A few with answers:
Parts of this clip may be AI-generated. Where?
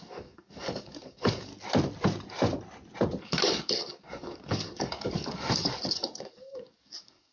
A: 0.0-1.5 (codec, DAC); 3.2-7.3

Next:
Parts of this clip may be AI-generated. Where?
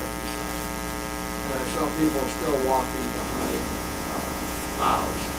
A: 3.2-5.4 (vocoder, Vocos)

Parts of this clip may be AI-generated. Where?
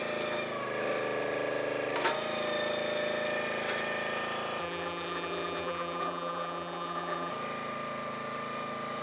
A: 4.6-7.3 (vocoder, BigVGAN v2)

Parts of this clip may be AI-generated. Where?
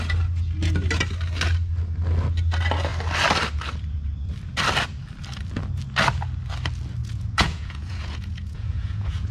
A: 7.0-9.3 (vocoder, Vocos)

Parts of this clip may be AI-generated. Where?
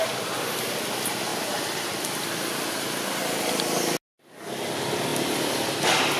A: none